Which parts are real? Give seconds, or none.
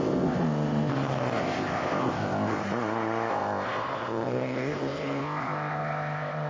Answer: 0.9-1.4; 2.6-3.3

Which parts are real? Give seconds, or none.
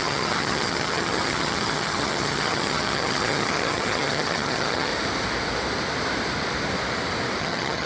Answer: 4.9-7.4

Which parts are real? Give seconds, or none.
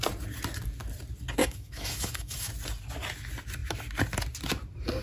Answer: 0.0-1.4; 2.5-5.0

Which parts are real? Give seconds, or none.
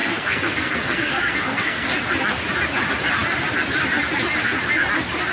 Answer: 1.9-5.3